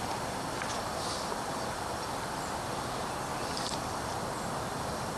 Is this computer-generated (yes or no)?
yes